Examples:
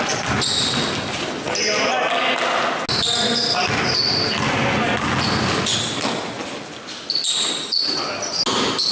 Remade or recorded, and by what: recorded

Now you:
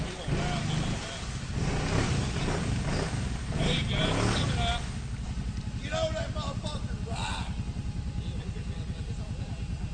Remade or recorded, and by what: recorded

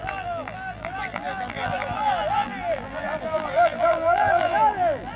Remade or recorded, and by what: remade, vocoder, BigVGAN v2